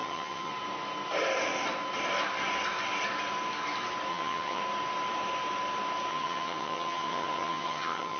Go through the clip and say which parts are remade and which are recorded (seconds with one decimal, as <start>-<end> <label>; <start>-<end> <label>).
0.0-0.5 remade; 0.5-4.1 recorded; 4.1-4.6 remade; 4.6-6.1 recorded; 6.1-8.2 remade